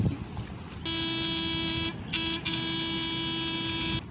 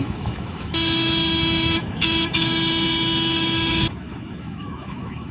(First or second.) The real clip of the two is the first